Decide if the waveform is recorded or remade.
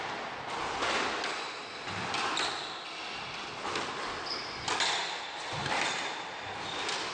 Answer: recorded